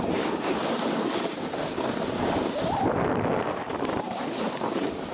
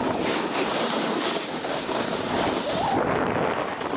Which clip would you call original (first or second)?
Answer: second